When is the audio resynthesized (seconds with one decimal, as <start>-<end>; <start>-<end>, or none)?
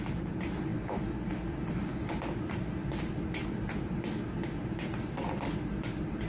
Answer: none